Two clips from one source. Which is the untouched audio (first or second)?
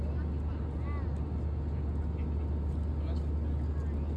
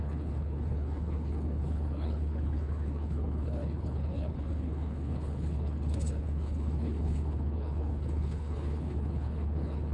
first